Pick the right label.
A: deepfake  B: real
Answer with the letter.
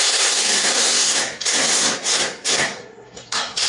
A